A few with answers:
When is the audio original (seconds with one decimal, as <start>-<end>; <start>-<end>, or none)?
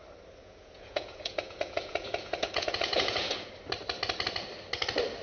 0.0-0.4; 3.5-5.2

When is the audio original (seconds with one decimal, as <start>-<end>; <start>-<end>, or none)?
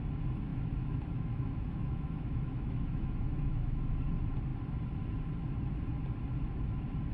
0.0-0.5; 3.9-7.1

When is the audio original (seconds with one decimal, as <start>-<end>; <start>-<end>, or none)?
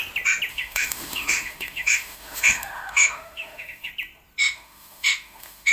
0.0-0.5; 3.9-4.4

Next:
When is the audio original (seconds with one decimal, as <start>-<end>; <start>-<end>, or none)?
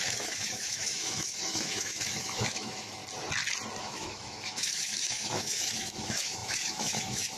3.0-3.8